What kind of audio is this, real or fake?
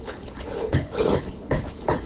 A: fake